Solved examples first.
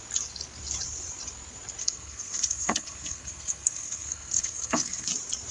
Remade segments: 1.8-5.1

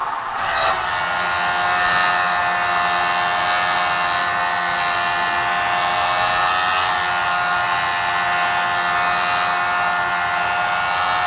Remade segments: 0.0-0.9

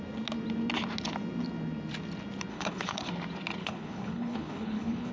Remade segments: 2.5-3.1; 3.6-5.1

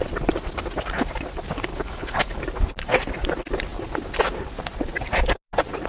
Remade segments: 1.7-2.4